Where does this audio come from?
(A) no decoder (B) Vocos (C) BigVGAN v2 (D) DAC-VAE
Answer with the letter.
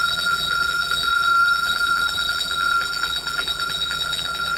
C